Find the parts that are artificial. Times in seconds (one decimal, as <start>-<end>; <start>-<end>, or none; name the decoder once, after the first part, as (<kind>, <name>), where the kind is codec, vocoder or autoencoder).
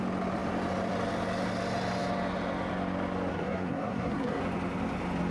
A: 3.3-4.4 (codec, SNAC)